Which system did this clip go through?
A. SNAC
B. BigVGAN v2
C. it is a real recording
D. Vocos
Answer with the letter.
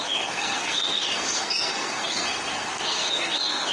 A